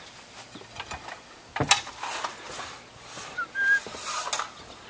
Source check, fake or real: real